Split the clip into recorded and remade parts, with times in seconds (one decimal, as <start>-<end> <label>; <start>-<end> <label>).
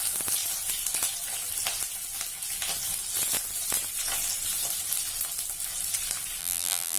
0.0-6.4 recorded; 6.4-7.0 remade